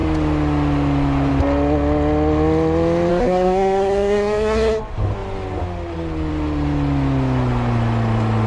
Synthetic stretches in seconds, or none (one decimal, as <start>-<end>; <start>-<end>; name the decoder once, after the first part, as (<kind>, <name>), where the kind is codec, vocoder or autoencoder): 3.1-4.8 (codec, SNAC)